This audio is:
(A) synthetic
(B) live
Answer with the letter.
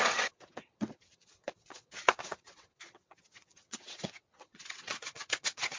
A